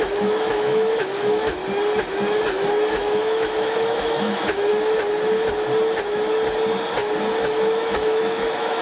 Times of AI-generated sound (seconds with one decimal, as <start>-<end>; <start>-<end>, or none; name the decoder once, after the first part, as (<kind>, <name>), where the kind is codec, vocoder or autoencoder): 0.0-1.6 (autoencoder, DAC-VAE); 2.9-4.7; 7.4-8.8

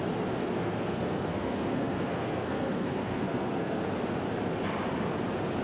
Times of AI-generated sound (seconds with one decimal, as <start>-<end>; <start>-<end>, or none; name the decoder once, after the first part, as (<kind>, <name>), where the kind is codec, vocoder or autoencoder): 0.4-3.8 (codec, SNAC)

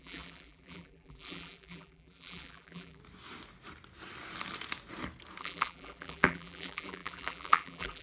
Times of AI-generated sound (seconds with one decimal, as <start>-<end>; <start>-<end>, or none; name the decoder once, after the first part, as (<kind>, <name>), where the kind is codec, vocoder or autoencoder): 0.0-3.0 (vocoder, BigVGAN v2); 5.4-8.0

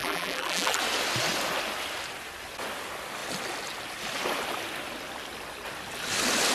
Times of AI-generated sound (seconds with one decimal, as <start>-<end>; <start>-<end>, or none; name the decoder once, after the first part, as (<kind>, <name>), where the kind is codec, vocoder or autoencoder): 0.0-0.8 (vocoder, BigVGAN v2)

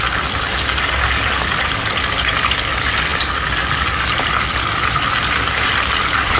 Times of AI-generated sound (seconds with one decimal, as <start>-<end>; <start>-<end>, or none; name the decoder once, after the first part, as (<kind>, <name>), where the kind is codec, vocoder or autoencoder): none

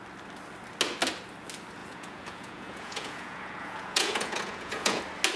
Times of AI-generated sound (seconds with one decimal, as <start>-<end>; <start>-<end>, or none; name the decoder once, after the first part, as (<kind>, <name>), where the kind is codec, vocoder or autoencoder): 1.8-5.0 (vocoder, Vocos)